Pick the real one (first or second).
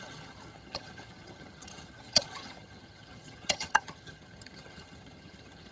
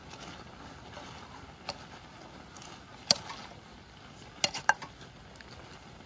second